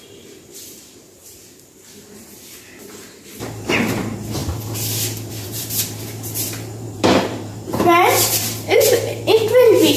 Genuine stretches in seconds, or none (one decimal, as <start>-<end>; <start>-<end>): 4.4-5.3